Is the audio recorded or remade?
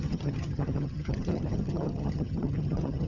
remade